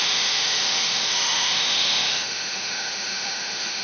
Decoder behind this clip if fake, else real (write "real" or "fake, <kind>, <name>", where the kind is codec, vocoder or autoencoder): fake, autoencoder, DAC-VAE